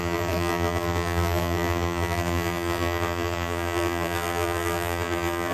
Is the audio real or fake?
fake